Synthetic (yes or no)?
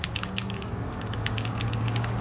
yes